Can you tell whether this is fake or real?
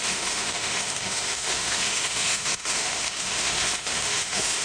fake